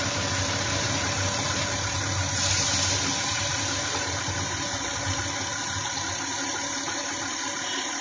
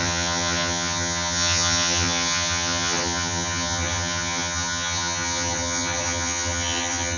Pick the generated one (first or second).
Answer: second